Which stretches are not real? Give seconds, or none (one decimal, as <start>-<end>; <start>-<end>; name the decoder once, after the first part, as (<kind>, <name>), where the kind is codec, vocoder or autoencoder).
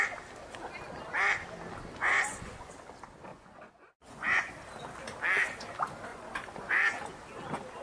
2.0-2.7 (vocoder, Vocos); 3.3-4.5; 6.1-7.0